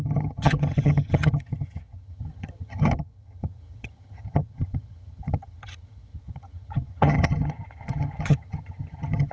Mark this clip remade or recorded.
remade